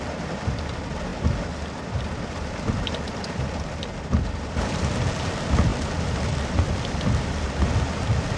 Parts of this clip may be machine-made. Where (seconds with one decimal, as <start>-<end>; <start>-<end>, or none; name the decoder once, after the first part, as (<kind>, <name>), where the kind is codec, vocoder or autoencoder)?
0.0-1.1 (vocoder, BigVGAN v2); 2.0-8.4